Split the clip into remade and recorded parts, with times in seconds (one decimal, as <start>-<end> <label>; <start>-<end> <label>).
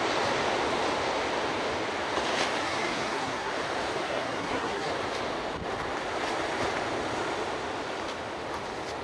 0.0-2.6 recorded; 2.6-3.5 remade; 3.5-4.0 recorded; 4.0-4.9 remade; 4.9-9.0 recorded